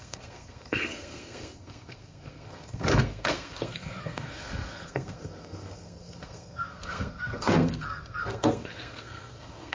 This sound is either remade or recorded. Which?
remade